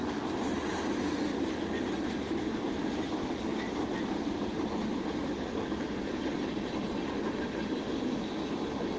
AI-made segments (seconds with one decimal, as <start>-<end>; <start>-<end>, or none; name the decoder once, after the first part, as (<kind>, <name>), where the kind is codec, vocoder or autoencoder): none